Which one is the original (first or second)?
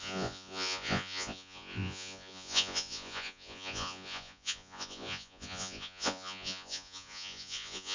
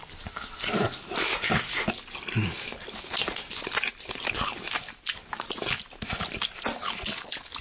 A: second